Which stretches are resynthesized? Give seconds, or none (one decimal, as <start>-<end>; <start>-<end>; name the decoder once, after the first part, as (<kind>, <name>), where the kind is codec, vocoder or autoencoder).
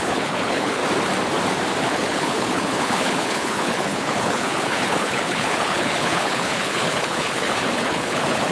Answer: 0.0-0.8 (codec, HILCodec); 1.8-8.5